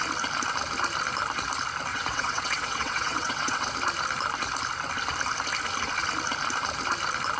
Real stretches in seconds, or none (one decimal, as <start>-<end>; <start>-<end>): 0.0-1.9; 3.7-7.4